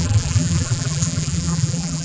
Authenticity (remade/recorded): remade